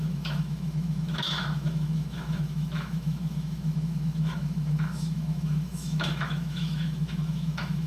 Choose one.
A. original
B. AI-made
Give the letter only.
B